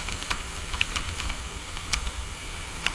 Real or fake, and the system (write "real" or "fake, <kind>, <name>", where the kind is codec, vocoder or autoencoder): fake, codec, SNAC